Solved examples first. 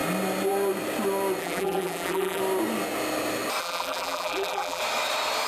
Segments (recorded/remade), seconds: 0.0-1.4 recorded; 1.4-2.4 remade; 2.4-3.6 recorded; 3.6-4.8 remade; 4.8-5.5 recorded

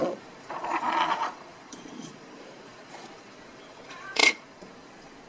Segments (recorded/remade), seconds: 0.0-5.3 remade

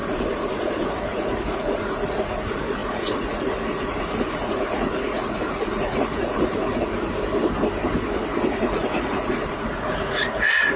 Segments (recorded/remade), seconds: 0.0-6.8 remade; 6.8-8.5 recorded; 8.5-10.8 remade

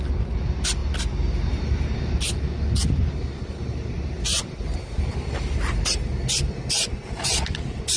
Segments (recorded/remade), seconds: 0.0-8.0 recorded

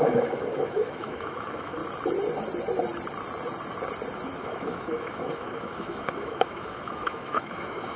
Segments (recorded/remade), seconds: 0.0-1.8 remade; 1.8-4.4 recorded; 4.4-8.0 remade